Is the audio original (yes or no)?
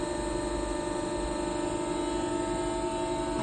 yes